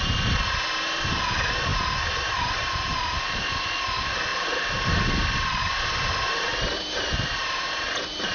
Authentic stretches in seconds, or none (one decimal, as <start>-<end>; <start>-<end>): 0.0-1.7; 3.3-8.3